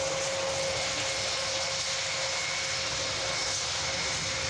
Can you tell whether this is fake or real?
real